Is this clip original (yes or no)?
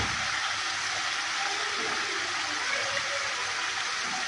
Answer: yes